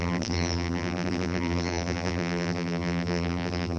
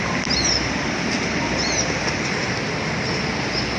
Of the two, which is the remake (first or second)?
first